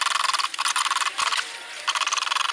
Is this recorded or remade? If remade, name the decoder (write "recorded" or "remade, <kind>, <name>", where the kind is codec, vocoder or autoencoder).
recorded